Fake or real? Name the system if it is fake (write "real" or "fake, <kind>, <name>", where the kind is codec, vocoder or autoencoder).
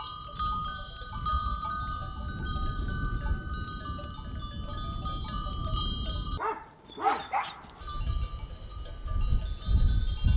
real